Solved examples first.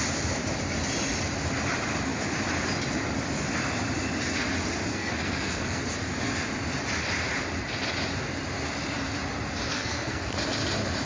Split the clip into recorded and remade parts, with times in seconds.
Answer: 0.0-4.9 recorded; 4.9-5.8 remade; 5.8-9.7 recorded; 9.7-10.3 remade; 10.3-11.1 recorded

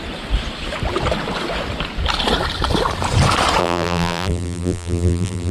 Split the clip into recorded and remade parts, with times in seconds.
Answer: 0.0-3.6 recorded; 3.6-5.5 remade

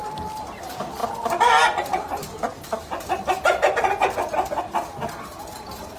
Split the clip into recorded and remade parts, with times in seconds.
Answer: 0.0-6.0 recorded

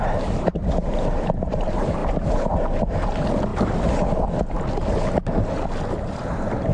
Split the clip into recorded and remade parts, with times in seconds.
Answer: 0.0-3.5 remade; 3.5-6.7 recorded

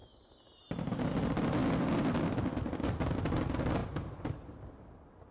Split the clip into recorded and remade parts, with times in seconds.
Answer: 0.0-1.0 remade; 1.0-3.8 recorded; 3.8-4.6 remade; 4.6-5.3 recorded

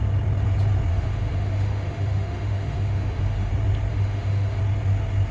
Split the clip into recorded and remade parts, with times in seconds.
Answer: 0.0-0.9 recorded; 0.9-3.5 remade; 3.5-3.9 recorded; 3.9-4.6 remade; 4.6-5.3 recorded

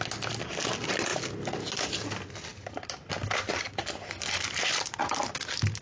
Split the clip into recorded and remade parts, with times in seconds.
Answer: 0.0-5.8 recorded

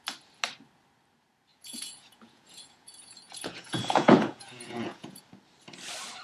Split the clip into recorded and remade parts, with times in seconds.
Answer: 0.0-1.5 recorded; 1.5-5.2 remade; 5.2-6.2 recorded